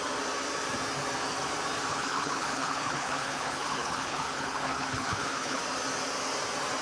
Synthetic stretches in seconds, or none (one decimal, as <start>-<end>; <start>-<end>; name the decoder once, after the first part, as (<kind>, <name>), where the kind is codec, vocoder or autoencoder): 1.9-5.6 (codec, HILCodec)